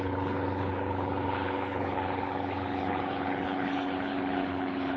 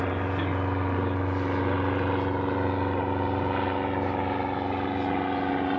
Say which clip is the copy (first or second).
first